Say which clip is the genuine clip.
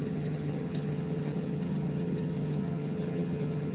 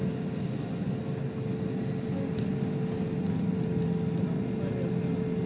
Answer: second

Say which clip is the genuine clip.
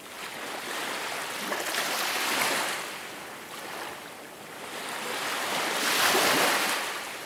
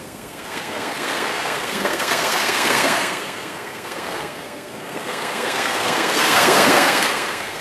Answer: first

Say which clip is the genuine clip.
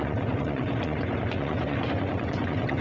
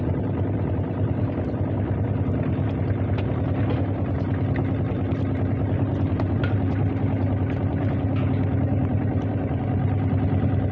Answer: second